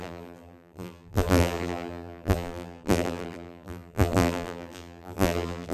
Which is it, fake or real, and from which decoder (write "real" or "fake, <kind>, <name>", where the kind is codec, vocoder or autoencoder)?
fake, vocoder, BigVGAN v2